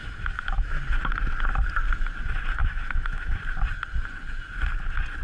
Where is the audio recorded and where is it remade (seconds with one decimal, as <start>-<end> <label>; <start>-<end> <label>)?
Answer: 0.0-0.8 remade; 0.8-2.6 recorded; 2.6-3.4 remade; 3.4-5.2 recorded